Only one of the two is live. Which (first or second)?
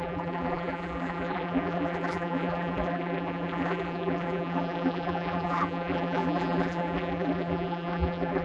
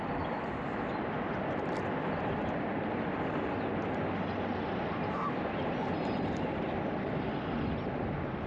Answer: second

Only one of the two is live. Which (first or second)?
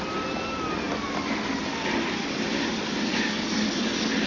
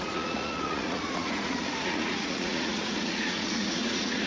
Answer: first